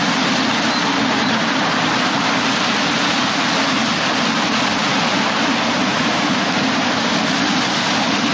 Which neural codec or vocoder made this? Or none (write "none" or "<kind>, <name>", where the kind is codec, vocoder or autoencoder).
none